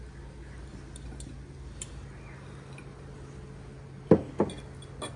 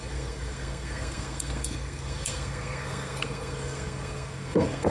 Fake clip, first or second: second